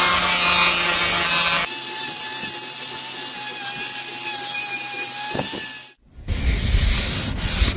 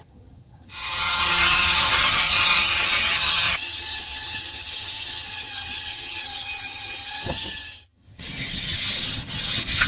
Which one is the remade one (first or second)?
second